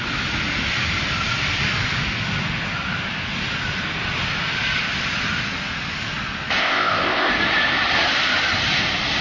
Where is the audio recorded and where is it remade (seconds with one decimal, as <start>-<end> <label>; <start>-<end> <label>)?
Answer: 0.0-6.6 recorded; 6.6-7.3 remade; 7.3-9.2 recorded